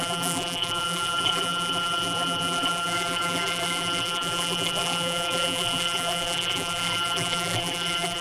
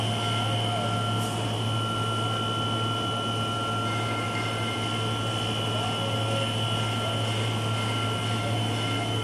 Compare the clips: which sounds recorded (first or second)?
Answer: second